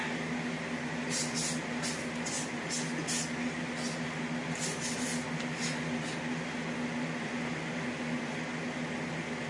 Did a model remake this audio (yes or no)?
no